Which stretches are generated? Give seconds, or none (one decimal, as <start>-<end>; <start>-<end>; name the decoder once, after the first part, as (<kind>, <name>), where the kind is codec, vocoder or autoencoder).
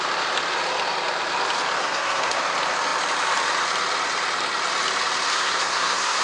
1.8-2.4 (codec, SNAC); 5.3-6.2